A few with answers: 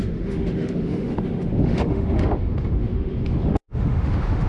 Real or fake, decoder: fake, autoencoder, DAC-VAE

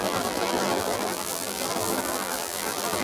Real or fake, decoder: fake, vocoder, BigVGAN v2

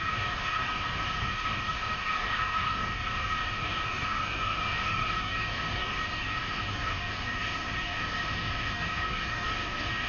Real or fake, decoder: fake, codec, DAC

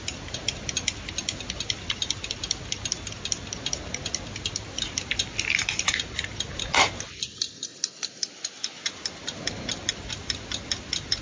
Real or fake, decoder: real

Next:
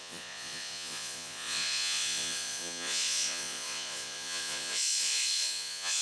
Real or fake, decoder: fake, vocoder, Vocos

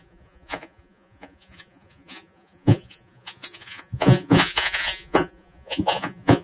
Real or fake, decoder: fake, vocoder, Vocos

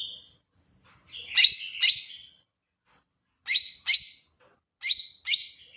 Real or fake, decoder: real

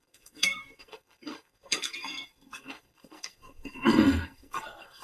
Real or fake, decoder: fake, codec, SNAC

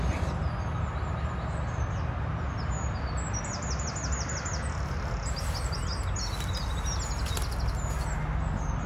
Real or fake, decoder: real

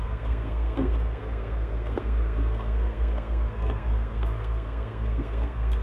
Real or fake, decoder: fake, codec, SNAC